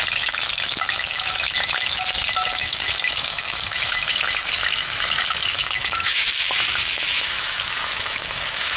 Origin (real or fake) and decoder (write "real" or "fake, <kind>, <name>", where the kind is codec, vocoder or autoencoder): fake, autoencoder, DAC-VAE